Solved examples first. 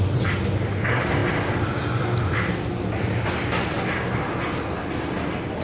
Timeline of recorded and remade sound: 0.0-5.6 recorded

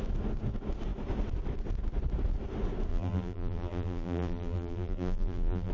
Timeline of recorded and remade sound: 0.0-2.9 recorded; 2.9-5.7 remade

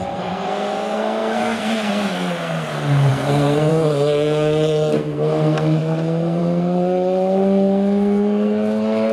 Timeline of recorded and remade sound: 0.0-9.1 remade

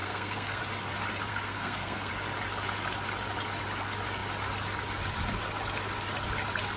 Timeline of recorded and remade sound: 0.0-0.6 remade; 0.6-1.3 recorded; 1.3-2.1 remade; 2.1-6.8 recorded